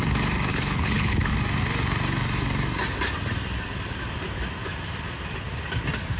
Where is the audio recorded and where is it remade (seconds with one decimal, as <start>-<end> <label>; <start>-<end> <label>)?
0.0-0.5 recorded; 0.5-1.3 remade; 1.3-6.2 recorded